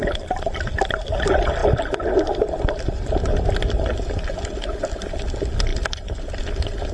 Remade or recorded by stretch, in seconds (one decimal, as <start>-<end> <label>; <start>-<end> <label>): 0.0-6.9 recorded